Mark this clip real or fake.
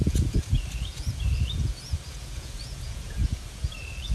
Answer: fake